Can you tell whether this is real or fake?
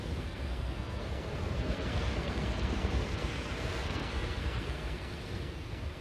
fake